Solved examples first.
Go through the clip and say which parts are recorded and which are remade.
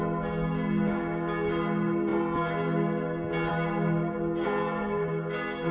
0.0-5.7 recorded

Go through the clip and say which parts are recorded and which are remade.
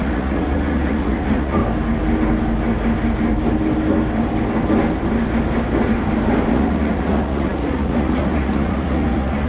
0.0-1.6 remade; 1.6-6.5 recorded; 6.5-9.5 remade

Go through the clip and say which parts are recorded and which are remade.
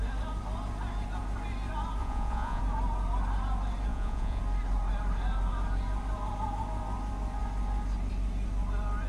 0.0-2.0 recorded; 2.0-2.6 remade; 2.6-3.9 recorded; 3.9-4.4 remade; 4.4-9.1 recorded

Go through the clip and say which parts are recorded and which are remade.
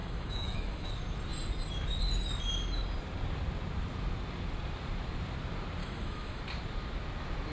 0.0-0.9 remade; 0.9-5.8 recorded; 5.8-6.4 remade; 6.4-7.5 recorded